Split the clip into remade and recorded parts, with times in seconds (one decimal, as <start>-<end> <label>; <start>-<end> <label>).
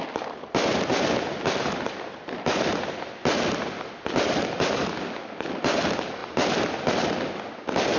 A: 0.0-0.9 recorded; 0.9-3.6 remade; 3.6-8.0 recorded